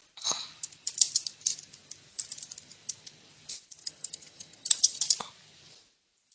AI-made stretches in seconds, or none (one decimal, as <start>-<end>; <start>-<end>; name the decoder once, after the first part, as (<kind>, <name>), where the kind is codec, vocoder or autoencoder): 3.8-5.0 (vocoder, HiFi-GAN)